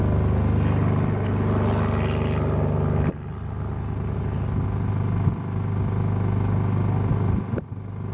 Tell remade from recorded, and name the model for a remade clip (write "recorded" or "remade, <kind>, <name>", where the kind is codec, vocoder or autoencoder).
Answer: recorded